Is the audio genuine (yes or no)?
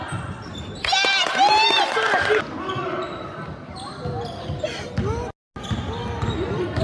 yes